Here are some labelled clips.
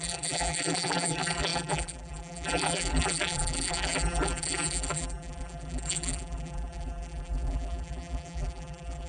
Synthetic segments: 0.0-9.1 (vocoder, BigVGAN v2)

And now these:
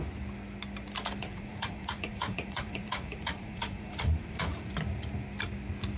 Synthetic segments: 1.2-4.7 (vocoder, Vocos)

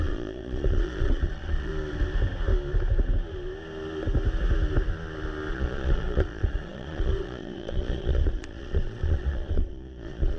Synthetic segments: 0.0-1.7 (vocoder, Vocos); 5.5-10.4

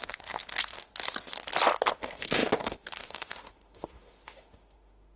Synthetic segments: 0.0-0.9 (autoencoder, DAC-VAE); 1.9-5.2

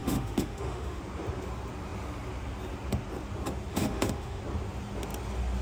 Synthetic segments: 0.0-1.0 (autoencoder, DAC-VAE); 3.7-4.4

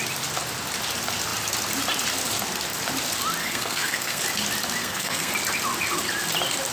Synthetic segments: 3.4-4.2 (codec, SNAC); 4.8-5.3

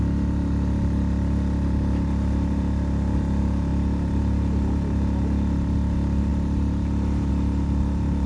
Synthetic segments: none

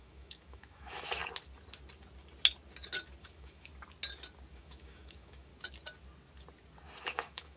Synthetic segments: 0.0-1.2 (autoencoder, DAC-VAE); 3.2-3.7; 4.6-5.5; 7.0-7.6